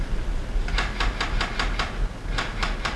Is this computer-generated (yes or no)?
no